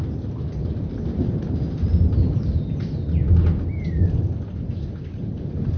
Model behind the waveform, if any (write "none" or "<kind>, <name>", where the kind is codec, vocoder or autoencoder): none